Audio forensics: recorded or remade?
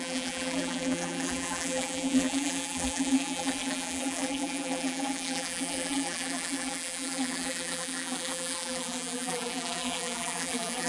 remade